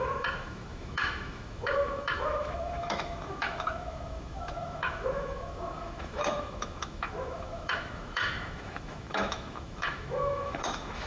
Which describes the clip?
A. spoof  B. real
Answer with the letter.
A